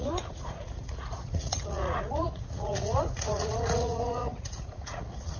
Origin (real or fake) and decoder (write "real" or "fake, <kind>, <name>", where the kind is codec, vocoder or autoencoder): fake, vocoder, Vocos